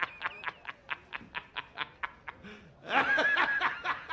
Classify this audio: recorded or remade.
recorded